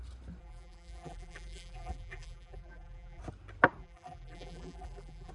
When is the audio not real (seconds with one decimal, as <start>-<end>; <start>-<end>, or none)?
0.4-3.2; 3.8-5.3